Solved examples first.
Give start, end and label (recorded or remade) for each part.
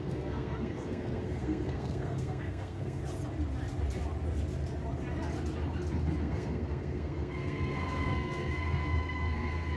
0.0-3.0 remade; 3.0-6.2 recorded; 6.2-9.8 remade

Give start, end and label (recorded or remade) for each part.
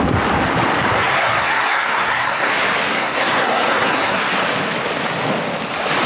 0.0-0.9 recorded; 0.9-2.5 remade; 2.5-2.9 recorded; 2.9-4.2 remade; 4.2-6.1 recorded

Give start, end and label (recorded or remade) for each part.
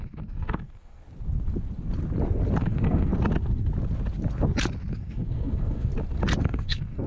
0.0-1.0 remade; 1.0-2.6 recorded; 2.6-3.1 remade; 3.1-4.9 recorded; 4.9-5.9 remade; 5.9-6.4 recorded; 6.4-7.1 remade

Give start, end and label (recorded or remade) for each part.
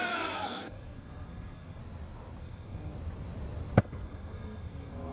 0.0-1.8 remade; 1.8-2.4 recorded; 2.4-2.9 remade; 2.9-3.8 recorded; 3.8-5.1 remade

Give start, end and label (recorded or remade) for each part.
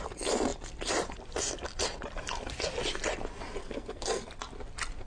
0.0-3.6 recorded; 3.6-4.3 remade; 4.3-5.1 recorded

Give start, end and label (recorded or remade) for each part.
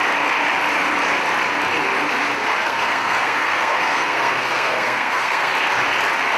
0.0-2.6 recorded; 2.6-5.5 remade; 5.5-6.4 recorded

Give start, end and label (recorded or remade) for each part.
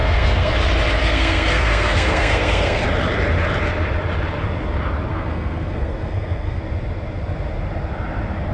0.0-0.5 remade; 0.5-1.0 recorded; 1.0-2.8 remade; 2.8-5.1 recorded; 5.1-6.6 remade; 6.6-8.5 recorded